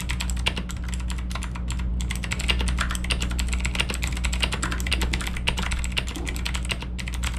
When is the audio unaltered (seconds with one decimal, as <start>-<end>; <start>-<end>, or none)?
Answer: 0.0-7.4